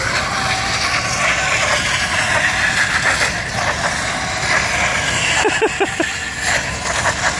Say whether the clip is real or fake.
real